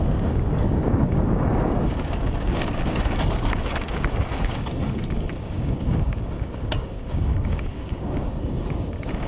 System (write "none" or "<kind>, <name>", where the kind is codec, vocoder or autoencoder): codec, DAC